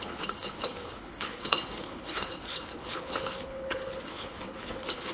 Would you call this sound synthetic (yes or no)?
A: yes